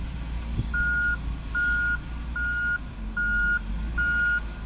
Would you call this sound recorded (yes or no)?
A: yes